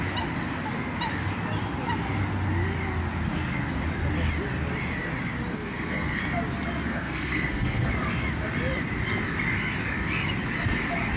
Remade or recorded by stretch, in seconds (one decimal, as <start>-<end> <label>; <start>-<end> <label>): 0.0-5.5 recorded; 5.5-6.2 remade; 6.2-6.9 recorded; 6.9-7.9 remade; 7.9-11.2 recorded